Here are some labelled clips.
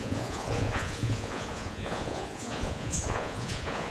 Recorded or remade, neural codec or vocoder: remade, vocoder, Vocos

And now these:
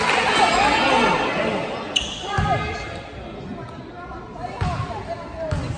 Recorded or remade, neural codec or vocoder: recorded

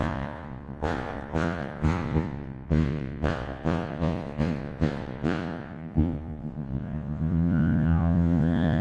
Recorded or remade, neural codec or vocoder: remade, vocoder, Vocos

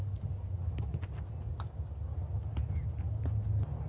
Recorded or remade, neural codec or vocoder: recorded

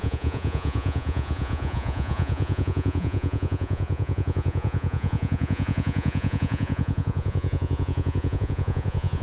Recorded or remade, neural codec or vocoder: remade, vocoder, Vocos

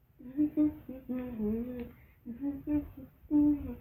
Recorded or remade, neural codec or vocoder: recorded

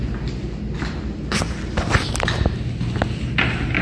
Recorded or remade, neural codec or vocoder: recorded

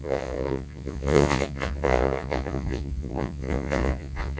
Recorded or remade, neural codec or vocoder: remade, vocoder, Vocos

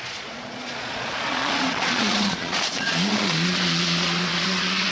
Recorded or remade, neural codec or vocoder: remade, vocoder, Vocos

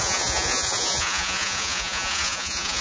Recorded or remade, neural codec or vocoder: remade, vocoder, Vocos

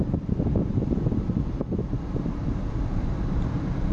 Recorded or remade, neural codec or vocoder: recorded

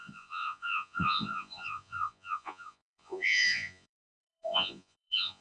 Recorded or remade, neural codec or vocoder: remade, vocoder, Vocos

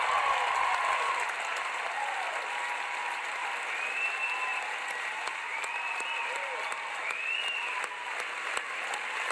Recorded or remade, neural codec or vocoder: recorded